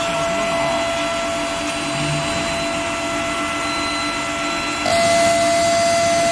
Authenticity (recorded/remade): recorded